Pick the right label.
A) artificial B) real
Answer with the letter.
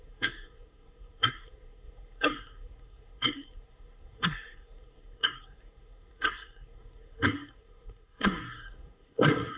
A